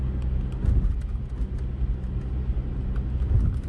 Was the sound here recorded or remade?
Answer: recorded